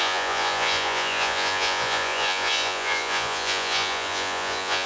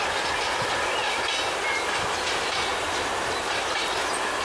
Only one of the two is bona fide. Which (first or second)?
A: second